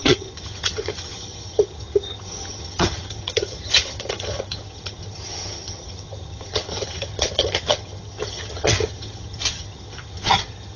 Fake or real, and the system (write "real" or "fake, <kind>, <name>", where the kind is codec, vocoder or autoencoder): fake, vocoder, HiFi-GAN